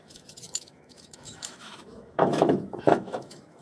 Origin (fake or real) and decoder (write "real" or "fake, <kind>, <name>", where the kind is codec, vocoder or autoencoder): fake, autoencoder, DAC-VAE